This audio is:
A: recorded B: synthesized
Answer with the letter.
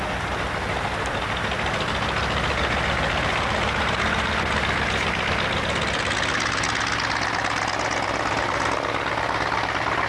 A